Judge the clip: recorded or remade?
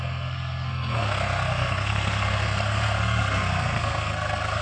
remade